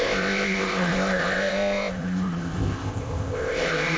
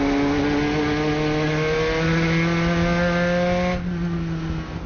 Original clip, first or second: second